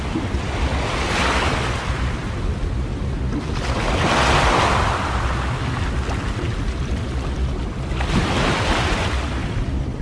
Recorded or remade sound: recorded